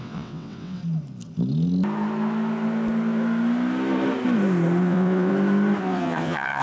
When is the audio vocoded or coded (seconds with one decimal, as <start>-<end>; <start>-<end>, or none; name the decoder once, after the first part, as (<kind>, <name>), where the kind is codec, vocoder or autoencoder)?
0.0-0.8 (vocoder, WaveNeXt); 4.8-5.3; 5.8-6.6